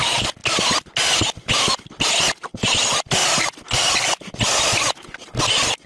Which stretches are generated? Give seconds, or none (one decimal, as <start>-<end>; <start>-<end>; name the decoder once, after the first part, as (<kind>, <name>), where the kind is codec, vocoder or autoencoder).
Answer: none

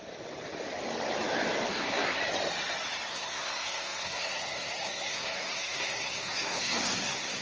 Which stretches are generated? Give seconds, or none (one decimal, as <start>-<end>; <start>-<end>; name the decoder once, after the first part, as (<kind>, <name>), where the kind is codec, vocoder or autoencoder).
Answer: 1.7-2.2 (codec, SNAC); 3.1-7.4

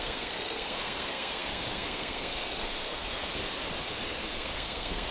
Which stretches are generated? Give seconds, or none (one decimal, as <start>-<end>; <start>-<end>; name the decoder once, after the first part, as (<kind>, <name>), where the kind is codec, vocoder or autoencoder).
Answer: 0.0-3.3 (codec, SNAC); 3.8-5.1

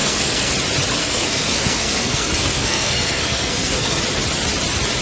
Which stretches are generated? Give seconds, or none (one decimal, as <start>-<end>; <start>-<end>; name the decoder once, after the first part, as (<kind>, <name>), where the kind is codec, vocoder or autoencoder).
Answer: 0.0-0.5 (codec, SNAC); 1.0-4.0

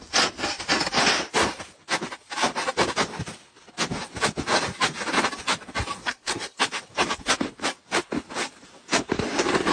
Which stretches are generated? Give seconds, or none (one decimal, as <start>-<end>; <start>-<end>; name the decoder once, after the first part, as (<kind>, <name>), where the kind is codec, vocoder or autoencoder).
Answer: 6.0-6.6 (codec, SNAC)

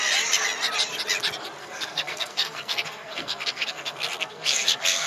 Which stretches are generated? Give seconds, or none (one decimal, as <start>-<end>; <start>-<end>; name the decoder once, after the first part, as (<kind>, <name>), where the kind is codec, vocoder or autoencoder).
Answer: 1.6-5.1 (codec, SNAC)

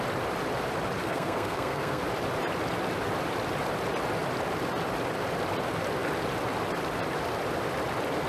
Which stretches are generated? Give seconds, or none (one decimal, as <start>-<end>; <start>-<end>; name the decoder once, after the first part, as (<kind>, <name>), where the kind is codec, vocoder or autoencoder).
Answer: 1.0-2.0 (codec, SNAC)